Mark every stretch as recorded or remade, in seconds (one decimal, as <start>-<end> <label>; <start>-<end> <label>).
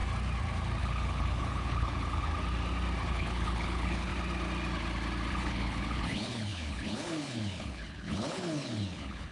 0.0-0.8 recorded; 0.8-2.3 remade; 2.3-3.1 recorded; 3.1-4.1 remade; 4.1-5.3 recorded; 5.3-9.3 remade